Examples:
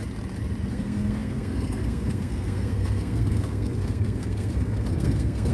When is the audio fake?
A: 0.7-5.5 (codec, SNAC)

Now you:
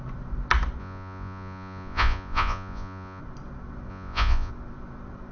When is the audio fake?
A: 0.8-3.2 (vocoder, Vocos); 3.9-4.5

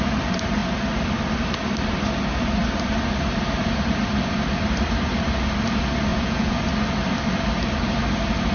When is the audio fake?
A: 6.1-6.6 (vocoder, Vocos)

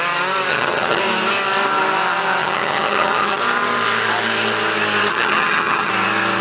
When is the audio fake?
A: 0.5-1.0 (vocoder, HiFi-GAN); 2.4-3.4; 5.1-5.9

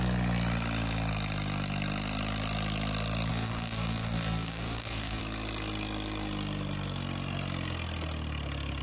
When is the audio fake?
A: 3.3-5.2 (codec, DAC)

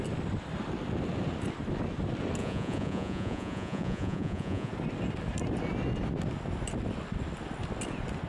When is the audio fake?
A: 2.4-4.7 (vocoder, Vocos)

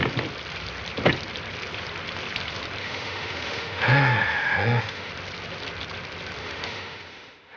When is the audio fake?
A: 2.8-5.1 (autoencoder, DAC-VAE); 6.4-7.6

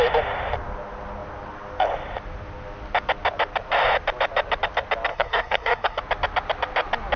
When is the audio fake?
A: 5.1-6.0 (codec, SNAC)